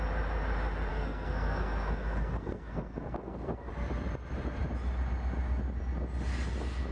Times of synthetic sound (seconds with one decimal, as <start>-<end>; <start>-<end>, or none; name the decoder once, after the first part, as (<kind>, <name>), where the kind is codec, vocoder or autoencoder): 0.9-3.7 (codec, SNAC)